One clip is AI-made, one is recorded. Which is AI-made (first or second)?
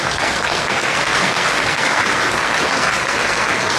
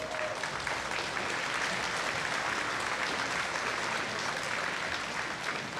first